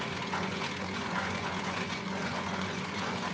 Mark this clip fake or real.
fake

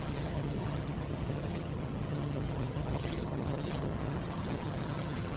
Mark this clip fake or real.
fake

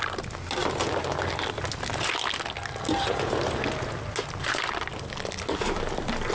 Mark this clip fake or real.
real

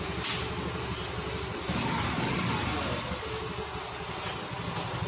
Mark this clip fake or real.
real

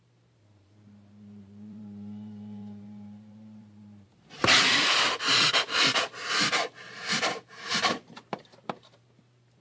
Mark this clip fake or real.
fake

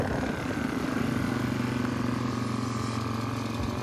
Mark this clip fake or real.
real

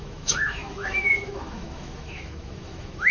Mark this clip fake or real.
fake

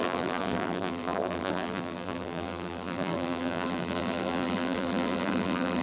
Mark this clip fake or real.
fake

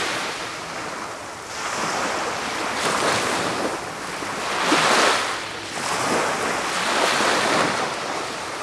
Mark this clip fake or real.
real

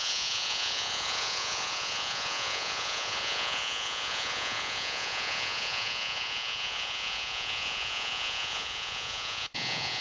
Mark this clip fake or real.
fake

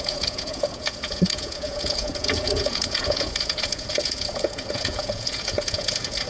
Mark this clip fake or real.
fake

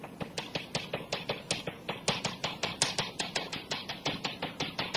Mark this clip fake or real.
real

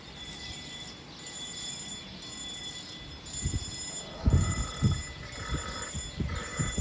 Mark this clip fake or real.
real